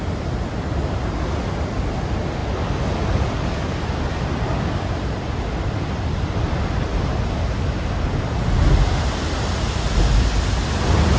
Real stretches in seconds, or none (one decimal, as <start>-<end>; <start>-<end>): 0.0-11.2